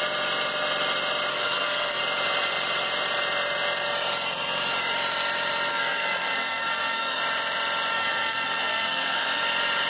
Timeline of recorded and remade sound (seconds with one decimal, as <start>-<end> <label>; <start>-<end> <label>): 0.0-1.3 recorded; 1.3-2.0 remade; 2.0-5.7 recorded; 5.7-7.2 remade; 7.2-7.9 recorded; 7.9-9.4 remade; 9.4-9.9 recorded